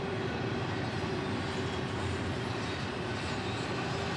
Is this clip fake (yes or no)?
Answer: no